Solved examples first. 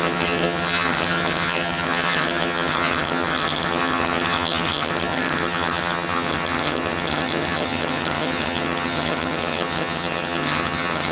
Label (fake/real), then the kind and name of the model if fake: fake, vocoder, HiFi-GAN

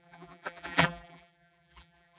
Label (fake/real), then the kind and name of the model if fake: fake, vocoder, BigVGAN v2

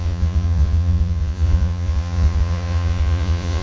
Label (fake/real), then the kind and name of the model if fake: fake, vocoder, Vocos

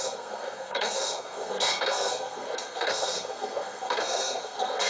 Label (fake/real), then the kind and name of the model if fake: fake, codec, SNAC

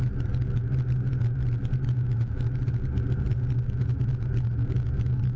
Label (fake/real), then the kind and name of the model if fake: real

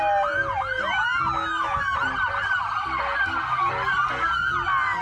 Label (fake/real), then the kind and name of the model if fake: real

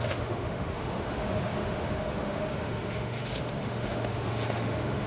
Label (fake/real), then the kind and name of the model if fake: fake, autoencoder, DAC-VAE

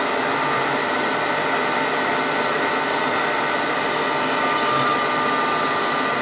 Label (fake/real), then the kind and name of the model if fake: real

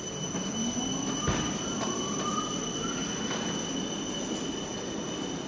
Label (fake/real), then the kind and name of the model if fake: real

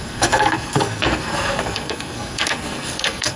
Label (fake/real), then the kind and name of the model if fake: fake, codec, SNAC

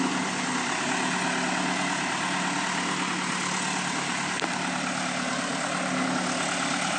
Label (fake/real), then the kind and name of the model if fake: real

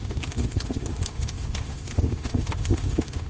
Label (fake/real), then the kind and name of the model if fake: fake, autoencoder, DAC-VAE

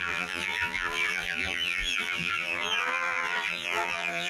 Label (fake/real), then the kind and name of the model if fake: fake, vocoder, BigVGAN v2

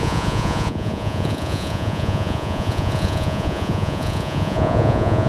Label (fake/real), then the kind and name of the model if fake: fake, vocoder, Vocos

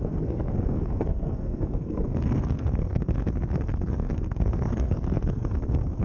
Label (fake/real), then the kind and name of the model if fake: fake, codec, SNAC